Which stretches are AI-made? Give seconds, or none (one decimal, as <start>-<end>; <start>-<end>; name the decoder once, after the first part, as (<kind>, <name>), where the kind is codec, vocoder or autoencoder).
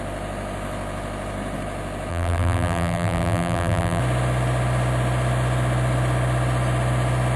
2.1-4.0 (vocoder, BigVGAN v2)